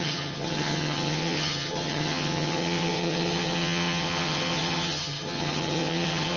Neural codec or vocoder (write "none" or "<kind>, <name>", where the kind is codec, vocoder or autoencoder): vocoder, HiFi-GAN